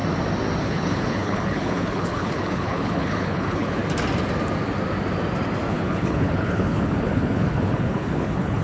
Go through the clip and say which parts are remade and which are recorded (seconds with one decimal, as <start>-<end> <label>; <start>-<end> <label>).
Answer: 0.0-0.6 recorded; 0.6-3.8 remade; 3.8-5.7 recorded; 5.7-8.6 remade